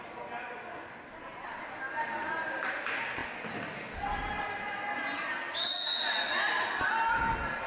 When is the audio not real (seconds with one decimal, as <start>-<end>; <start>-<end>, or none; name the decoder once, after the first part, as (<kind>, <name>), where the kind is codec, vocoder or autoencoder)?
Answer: none

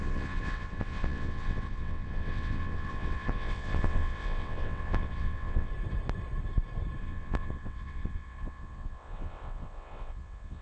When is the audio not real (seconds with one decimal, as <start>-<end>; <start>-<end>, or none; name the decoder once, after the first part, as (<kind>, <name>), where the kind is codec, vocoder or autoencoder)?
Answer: 0.0-5.7 (vocoder, WaveNeXt); 7.0-10.6

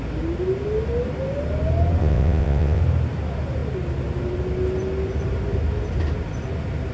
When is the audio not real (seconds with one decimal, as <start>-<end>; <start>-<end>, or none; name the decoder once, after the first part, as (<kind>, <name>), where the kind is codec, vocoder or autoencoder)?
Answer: 2.0-2.8 (vocoder, WaveNeXt)